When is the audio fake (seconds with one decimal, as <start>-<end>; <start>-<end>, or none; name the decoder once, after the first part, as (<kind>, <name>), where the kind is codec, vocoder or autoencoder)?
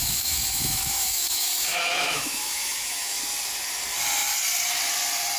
0.0-3.2 (autoencoder, DAC-VAE)